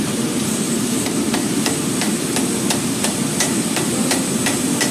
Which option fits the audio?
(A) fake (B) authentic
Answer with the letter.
A